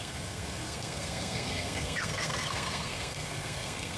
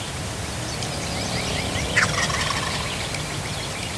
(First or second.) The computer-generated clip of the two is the first